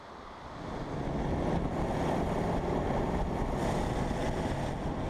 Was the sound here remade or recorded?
recorded